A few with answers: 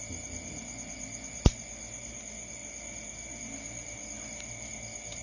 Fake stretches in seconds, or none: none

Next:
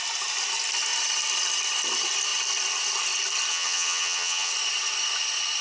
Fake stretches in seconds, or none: 3.5-4.5 (vocoder, HiFi-GAN)

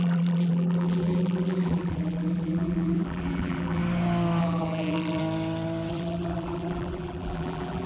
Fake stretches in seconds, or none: 0.0-3.8 (vocoder, BigVGAN v2); 4.4-5.2; 5.9-7.9

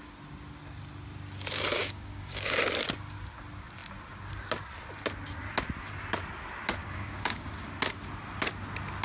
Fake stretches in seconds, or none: 1.8-2.6 (codec, DAC); 6.8-7.5

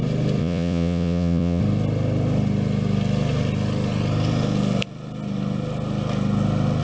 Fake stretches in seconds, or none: 0.4-1.6 (vocoder, Vocos)